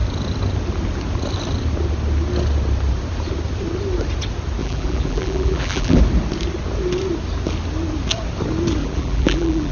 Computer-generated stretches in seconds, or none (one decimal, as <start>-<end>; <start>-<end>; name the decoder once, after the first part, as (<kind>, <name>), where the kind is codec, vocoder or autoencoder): 4.6-6.0 (vocoder, BigVGAN v2); 8.8-9.7